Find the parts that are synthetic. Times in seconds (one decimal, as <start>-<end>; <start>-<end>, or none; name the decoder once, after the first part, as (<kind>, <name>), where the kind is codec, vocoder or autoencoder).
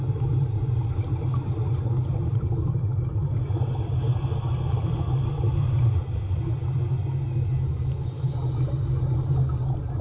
none